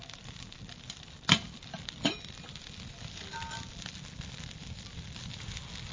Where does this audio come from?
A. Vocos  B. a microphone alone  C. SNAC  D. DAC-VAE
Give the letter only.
B